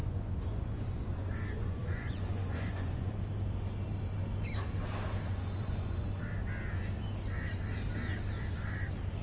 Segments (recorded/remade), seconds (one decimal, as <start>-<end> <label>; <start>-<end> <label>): 0.0-3.1 remade; 3.1-5.3 recorded; 5.3-6.2 remade; 6.2-9.2 recorded